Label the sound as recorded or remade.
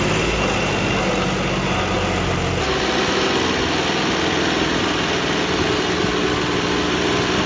recorded